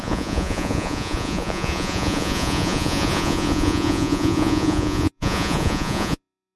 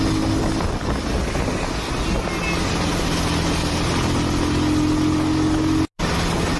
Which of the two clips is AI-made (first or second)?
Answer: first